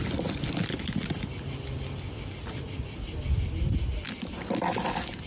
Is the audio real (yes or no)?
yes